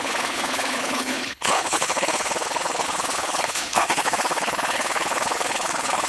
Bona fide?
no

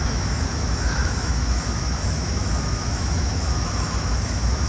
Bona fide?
no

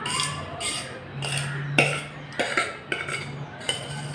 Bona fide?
yes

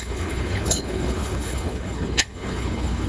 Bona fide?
no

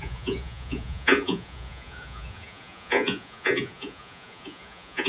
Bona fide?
no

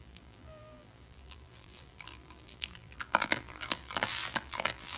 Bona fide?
no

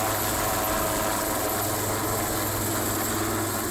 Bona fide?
yes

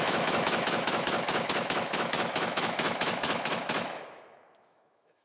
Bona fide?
no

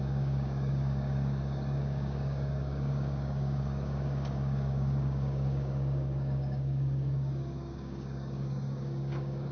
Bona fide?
no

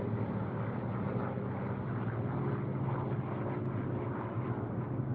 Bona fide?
yes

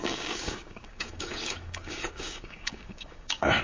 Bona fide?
no